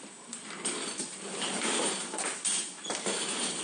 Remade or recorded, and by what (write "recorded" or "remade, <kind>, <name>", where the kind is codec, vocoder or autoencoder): remade, vocoder, BigVGAN v2